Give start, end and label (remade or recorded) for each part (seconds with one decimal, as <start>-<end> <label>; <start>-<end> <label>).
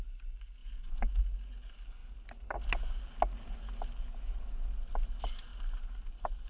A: 0.0-6.5 recorded